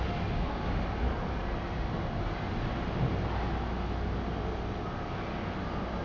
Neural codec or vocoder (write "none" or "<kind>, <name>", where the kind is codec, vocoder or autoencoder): none